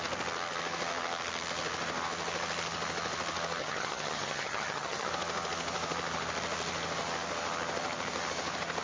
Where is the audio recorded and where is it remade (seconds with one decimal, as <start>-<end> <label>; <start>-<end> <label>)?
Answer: 0.0-3.6 recorded; 3.6-5.1 remade; 5.1-8.8 recorded